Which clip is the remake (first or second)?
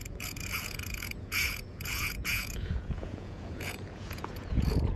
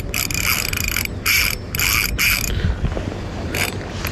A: first